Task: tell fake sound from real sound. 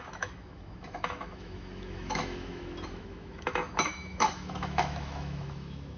fake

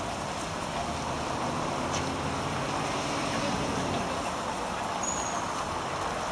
real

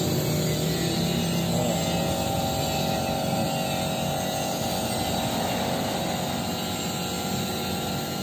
real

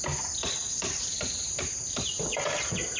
real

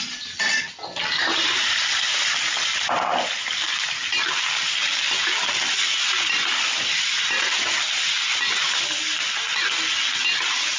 real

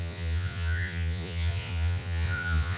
fake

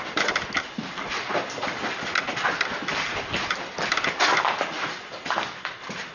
real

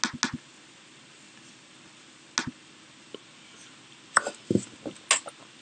real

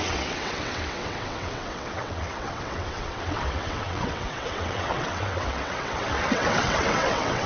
fake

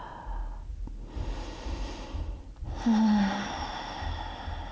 real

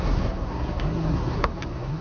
fake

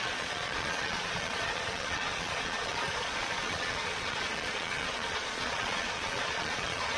fake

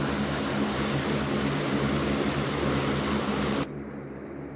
real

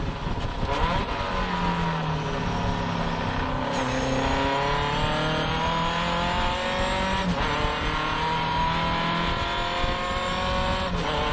real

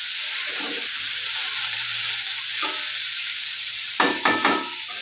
fake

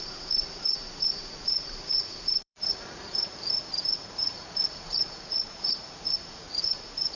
fake